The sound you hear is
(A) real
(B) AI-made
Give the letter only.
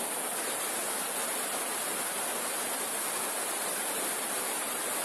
A